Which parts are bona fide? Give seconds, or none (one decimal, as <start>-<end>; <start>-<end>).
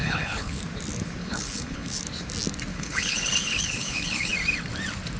0.6-1.2; 2.0-2.7; 4.3-5.2